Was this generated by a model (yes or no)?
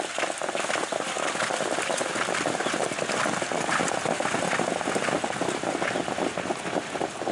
no